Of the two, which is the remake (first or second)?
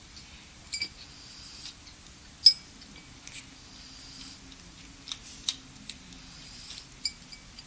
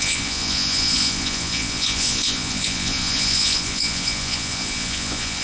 second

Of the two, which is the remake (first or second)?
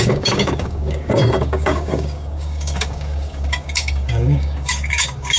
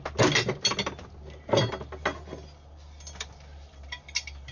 first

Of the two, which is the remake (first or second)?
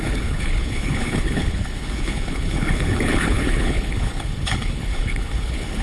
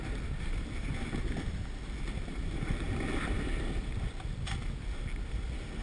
first